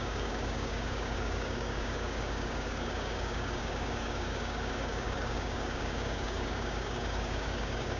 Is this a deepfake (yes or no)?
yes